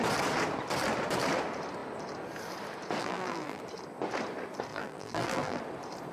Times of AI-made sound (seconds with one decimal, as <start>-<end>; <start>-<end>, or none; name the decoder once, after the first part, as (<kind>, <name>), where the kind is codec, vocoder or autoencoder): 3.0-3.6 (vocoder, BigVGAN v2); 4.7-5.6